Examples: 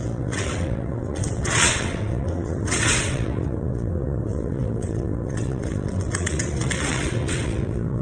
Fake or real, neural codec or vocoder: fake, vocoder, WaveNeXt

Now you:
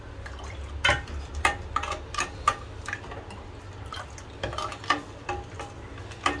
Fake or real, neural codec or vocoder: real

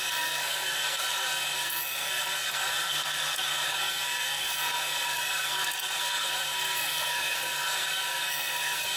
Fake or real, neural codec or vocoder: fake, codec, SNAC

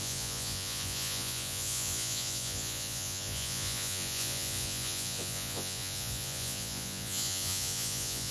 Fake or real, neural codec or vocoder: fake, vocoder, Vocos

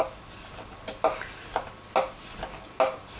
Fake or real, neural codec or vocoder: real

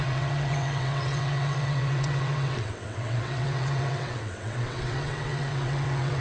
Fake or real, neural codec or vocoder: fake, vocoder, WaveNeXt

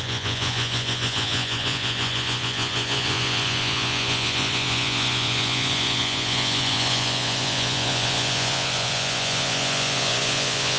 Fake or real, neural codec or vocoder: fake, vocoder, Vocos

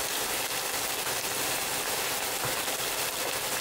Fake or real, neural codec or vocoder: real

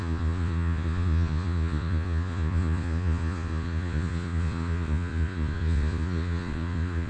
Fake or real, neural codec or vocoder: fake, vocoder, Vocos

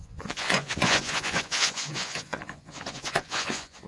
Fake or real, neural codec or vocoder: fake, vocoder, Vocos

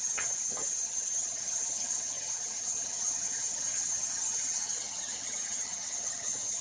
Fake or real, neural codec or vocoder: fake, vocoder, HiFi-GAN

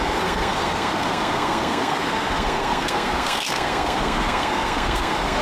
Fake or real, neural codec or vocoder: fake, codec, SNAC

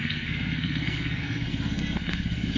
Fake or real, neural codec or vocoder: fake, codec, SNAC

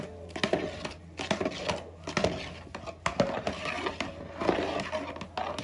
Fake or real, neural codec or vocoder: real